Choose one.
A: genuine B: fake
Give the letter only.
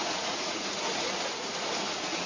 B